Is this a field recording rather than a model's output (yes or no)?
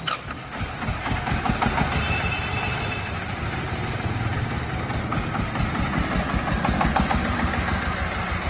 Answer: yes